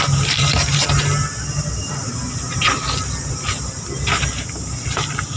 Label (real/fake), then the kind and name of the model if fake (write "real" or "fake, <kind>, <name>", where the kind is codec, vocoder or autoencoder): real